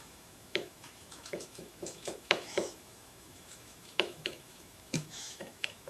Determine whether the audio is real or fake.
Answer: fake